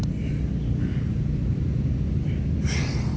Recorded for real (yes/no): yes